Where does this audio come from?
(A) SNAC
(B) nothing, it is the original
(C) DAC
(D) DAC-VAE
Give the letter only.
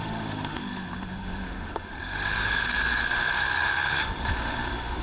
D